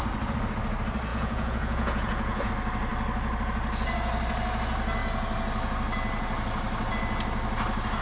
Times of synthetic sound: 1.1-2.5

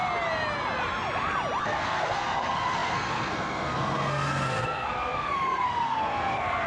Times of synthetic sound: 1.6-6.7

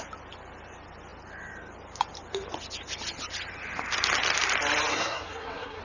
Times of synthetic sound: 4.9-5.8